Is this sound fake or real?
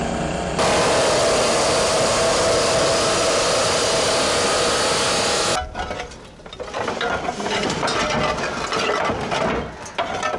real